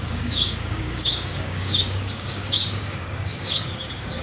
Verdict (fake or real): fake